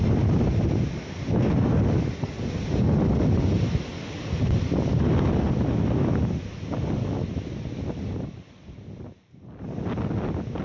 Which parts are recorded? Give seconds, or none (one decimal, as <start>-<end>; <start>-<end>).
0.0-10.6